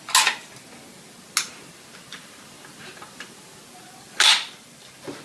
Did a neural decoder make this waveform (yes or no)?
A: no